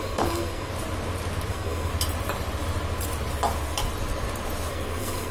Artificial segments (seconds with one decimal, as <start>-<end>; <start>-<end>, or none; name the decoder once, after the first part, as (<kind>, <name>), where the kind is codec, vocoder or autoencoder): 0.0-0.7 (codec, SNAC); 1.5-1.9; 4.7-5.3